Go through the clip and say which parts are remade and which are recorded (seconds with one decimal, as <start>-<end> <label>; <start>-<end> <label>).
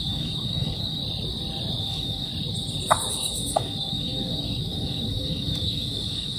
0.0-1.0 remade; 1.0-1.8 recorded; 1.8-2.3 remade; 2.3-3.1 recorded; 3.1-6.4 remade